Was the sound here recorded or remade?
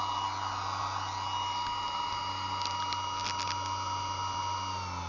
recorded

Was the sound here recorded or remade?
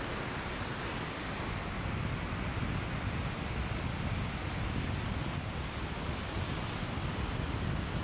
recorded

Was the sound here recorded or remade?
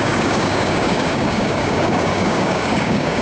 remade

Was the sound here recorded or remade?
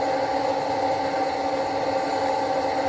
recorded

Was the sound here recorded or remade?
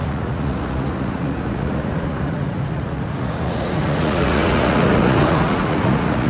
remade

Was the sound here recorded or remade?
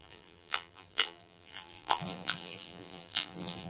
remade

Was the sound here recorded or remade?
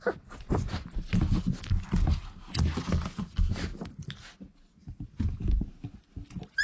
recorded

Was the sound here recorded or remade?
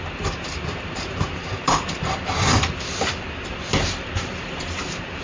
remade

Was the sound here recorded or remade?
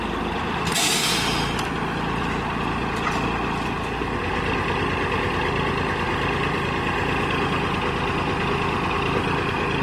recorded